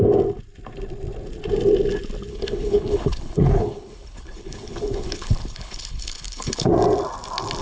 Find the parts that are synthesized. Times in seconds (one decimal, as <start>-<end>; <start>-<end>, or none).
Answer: 2.3-6.7